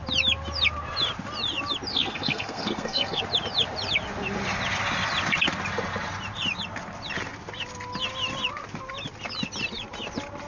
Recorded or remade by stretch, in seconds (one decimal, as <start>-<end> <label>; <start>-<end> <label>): 0.0-1.9 recorded; 1.9-3.2 remade; 3.2-10.5 recorded

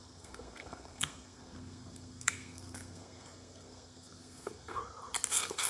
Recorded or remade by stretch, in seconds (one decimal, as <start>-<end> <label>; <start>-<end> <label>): 0.0-4.8 remade; 4.8-5.3 recorded; 5.3-5.7 remade

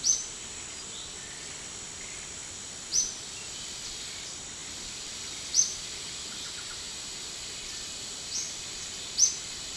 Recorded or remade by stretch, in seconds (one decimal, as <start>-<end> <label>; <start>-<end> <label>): 0.0-2.9 recorded; 2.9-3.5 remade; 3.5-4.6 recorded; 4.6-6.3 remade; 6.3-9.8 recorded

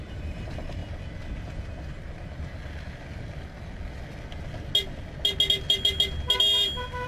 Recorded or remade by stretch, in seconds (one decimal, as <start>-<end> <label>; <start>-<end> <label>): 0.0-0.8 remade; 0.8-1.4 recorded; 1.4-2.5 remade; 2.5-7.1 recorded

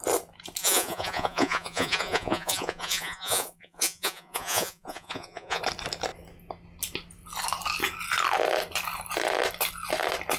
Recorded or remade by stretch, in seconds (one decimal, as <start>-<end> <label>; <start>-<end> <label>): 0.0-0.6 recorded; 0.6-5.6 remade; 5.6-10.4 recorded